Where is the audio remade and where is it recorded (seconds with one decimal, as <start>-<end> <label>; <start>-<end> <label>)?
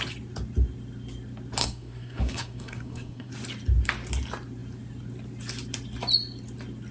0.0-1.6 recorded; 1.6-3.3 remade; 3.3-6.9 recorded